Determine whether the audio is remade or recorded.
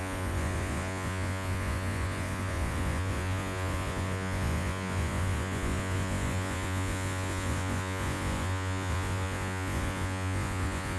remade